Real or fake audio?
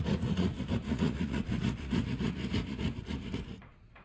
fake